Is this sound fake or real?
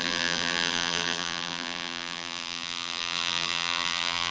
fake